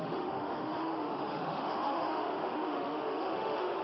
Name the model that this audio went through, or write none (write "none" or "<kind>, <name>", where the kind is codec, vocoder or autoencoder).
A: autoencoder, DAC-VAE